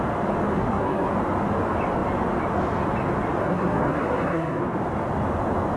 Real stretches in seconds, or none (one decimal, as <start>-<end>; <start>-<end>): 0.0-0.5; 1.1-3.4; 4.6-5.8